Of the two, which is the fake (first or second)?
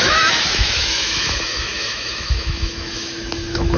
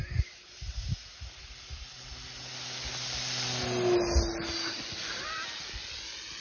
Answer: first